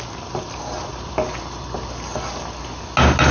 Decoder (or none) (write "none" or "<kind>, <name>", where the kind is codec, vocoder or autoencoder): none